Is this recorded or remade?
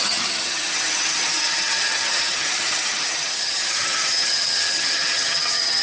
remade